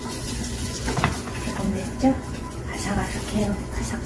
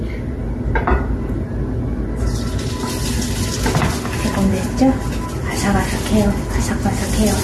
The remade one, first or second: first